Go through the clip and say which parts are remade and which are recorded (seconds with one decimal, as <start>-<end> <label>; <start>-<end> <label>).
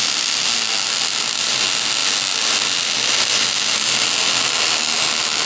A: 0.0-5.5 recorded